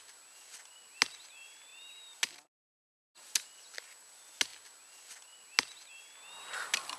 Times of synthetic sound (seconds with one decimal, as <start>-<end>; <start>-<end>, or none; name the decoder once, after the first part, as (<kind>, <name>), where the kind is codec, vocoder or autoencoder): none

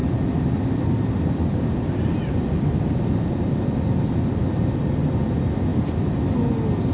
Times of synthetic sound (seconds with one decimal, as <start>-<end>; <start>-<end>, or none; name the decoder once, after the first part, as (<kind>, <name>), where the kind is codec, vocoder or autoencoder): 0.0-4.1 (vocoder, BigVGAN v2); 5.7-6.3

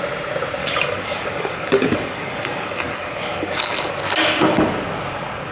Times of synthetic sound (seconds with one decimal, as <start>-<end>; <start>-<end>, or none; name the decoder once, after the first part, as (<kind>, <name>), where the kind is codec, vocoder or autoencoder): 0.6-3.9 (codec, DAC)

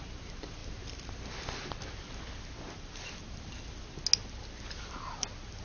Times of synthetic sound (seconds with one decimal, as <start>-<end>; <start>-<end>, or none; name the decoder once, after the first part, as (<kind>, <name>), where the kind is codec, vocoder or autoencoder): none

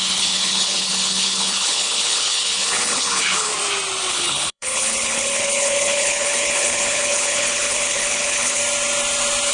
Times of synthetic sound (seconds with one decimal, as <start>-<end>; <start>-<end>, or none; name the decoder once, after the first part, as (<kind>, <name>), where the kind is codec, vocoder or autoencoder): 0.0-3.5 (codec, HILCodec); 4.1-8.6

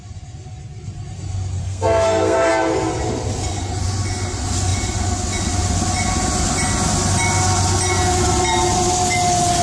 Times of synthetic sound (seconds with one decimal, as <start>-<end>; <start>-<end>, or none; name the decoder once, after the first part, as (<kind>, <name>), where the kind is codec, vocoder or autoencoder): 1.6-2.5 (codec, SNAC)